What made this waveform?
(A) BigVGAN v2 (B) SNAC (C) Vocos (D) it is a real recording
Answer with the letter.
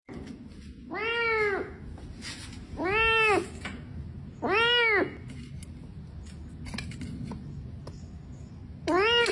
D